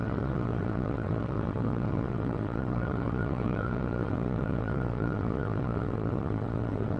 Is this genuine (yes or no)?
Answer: no